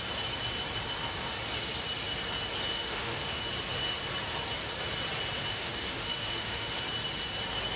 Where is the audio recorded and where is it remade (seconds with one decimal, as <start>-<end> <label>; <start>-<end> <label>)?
0.0-2.7 recorded; 2.7-3.5 remade; 3.5-5.5 recorded; 5.5-6.8 remade; 6.8-7.8 recorded